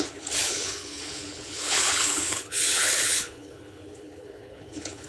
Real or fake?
fake